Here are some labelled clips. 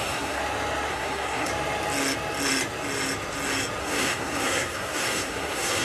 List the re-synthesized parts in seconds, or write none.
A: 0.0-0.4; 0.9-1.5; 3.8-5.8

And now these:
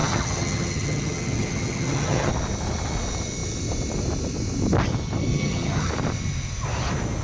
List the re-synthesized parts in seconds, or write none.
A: 0.0-2.3; 5.3-5.9

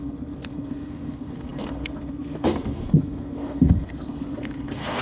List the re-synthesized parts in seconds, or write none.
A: 0.0-5.0